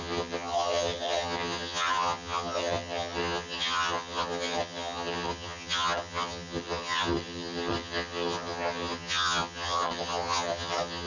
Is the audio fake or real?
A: fake